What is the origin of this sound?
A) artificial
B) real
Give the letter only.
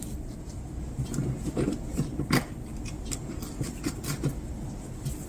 B